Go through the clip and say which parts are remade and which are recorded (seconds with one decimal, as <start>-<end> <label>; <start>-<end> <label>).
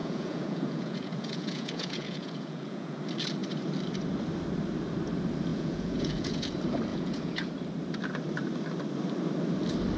0.0-3.0 remade; 3.0-5.5 recorded; 5.5-6.5 remade; 6.5-6.9 recorded; 6.9-7.5 remade; 7.5-10.0 recorded